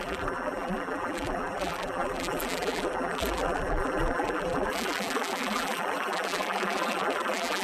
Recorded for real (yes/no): no